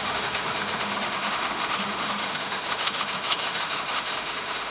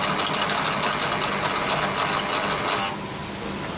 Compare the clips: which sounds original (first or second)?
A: second